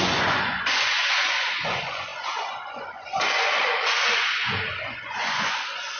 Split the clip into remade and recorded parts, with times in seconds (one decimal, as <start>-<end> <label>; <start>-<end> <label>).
0.0-6.0 remade

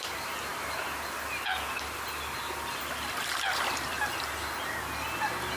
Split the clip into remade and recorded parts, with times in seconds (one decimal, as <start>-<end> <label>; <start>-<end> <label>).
0.0-5.6 recorded